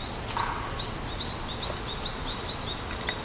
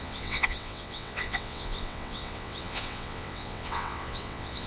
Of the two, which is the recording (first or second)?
first